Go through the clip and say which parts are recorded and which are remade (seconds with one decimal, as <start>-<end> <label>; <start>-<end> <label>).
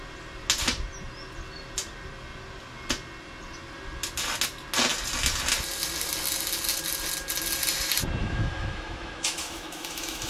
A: 0.0-8.2 recorded; 8.2-10.3 remade